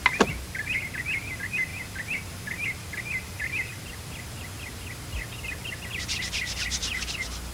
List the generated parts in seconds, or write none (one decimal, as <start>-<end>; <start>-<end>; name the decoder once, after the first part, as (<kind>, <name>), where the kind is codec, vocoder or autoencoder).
none